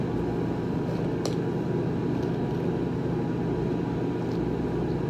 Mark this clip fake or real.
real